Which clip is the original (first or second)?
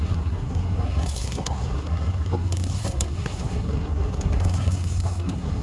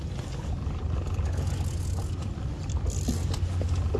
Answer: second